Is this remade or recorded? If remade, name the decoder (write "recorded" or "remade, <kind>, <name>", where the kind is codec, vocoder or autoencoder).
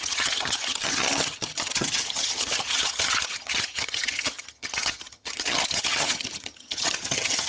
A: remade, vocoder, HiFi-GAN